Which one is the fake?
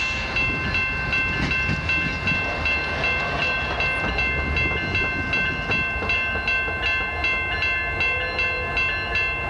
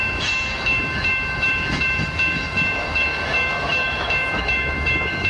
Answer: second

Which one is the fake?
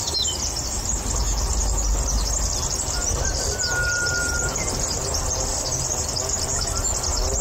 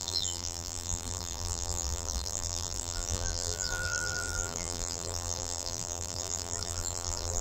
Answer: second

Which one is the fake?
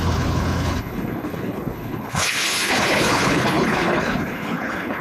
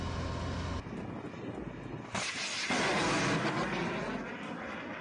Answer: first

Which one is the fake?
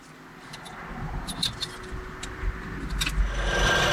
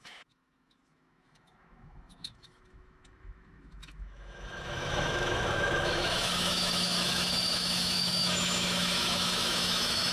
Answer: second